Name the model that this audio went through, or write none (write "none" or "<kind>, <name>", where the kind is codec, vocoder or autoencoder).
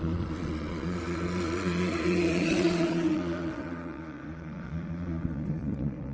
vocoder, Vocos